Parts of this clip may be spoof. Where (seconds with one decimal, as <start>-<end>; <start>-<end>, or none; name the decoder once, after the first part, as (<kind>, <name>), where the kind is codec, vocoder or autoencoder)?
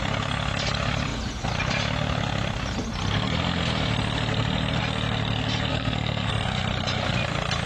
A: 5.7-6.3 (codec, SNAC)